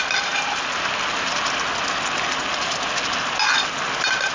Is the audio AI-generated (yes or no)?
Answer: no